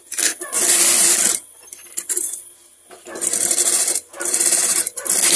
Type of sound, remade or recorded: recorded